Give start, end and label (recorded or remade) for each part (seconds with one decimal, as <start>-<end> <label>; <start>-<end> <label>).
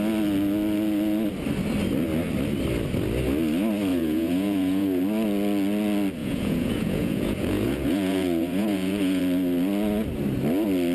0.0-3.9 recorded; 3.9-5.0 remade; 5.0-6.2 recorded; 6.2-9.2 remade; 9.2-10.9 recorded